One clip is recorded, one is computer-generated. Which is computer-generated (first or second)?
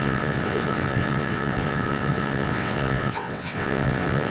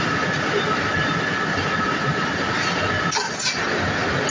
first